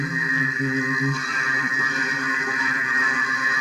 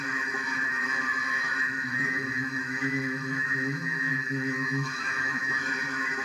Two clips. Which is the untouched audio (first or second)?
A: first